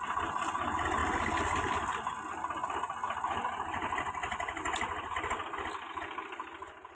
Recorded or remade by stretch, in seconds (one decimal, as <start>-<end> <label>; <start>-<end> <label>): 0.0-6.9 recorded